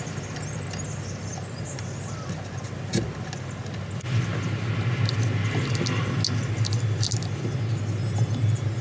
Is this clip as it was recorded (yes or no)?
yes